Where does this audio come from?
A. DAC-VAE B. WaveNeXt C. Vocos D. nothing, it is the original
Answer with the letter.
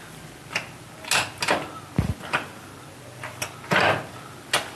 D